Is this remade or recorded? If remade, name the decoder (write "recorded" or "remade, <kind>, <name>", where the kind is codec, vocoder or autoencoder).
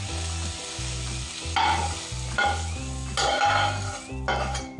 recorded